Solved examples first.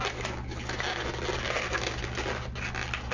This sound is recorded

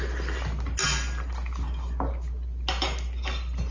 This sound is recorded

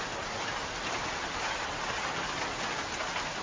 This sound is recorded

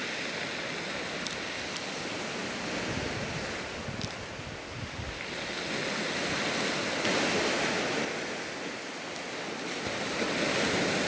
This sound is recorded